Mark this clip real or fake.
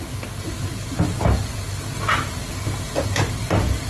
real